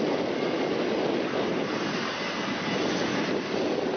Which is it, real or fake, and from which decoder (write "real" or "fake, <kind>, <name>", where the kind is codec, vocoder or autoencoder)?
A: real